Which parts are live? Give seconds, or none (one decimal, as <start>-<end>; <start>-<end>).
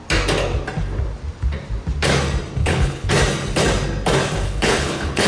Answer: 0.0-2.6; 3.1-4.3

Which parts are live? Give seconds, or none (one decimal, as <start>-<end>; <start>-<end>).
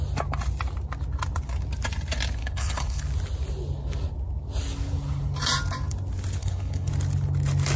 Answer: 0.0-2.4; 3.0-6.4; 6.9-7.8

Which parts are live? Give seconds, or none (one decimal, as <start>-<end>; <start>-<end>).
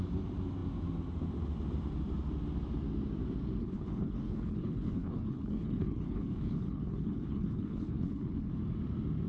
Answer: 0.0-3.6; 8.5-9.3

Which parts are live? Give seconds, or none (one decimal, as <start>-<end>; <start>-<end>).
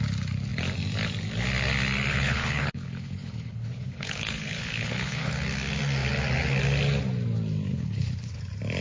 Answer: 0.0-2.1; 5.3-7.7; 8.4-8.8